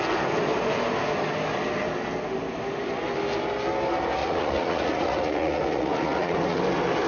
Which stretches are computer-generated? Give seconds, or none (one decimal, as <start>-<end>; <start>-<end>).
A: 4.2-6.6